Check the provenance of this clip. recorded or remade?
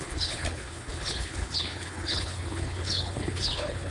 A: remade